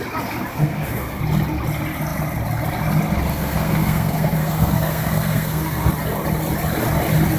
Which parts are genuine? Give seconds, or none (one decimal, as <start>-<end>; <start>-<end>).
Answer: 0.0-0.5; 1.2-3.3; 5.9-7.4